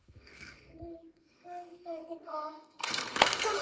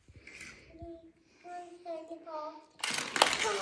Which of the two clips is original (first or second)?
second